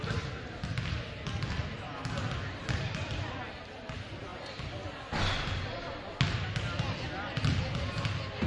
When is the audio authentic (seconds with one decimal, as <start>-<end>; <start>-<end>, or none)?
0.0-8.5